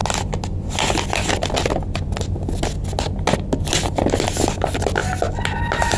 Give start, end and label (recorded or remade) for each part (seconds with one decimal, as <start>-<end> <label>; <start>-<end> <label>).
0.0-3.6 recorded; 3.6-5.0 remade; 5.0-6.0 recorded